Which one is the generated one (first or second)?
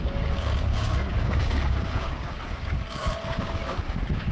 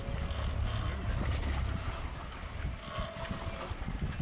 first